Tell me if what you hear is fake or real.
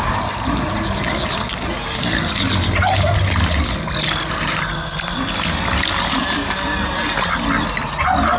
real